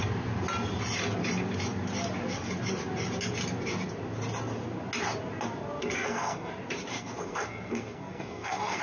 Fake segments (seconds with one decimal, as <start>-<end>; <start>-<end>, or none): 5.8-6.5; 6.9-8.8